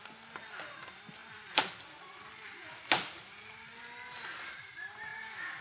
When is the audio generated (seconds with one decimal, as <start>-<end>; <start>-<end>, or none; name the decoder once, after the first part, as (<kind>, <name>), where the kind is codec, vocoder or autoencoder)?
none